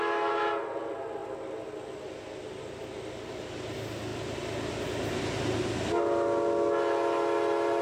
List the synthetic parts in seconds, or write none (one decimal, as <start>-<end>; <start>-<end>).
none